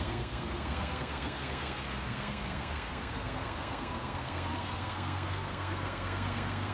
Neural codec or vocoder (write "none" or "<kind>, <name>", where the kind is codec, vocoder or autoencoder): codec, SNAC